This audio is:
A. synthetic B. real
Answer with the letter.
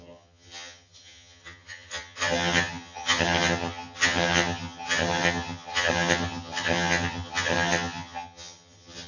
A